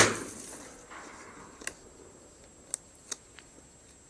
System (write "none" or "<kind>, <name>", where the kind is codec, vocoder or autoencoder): none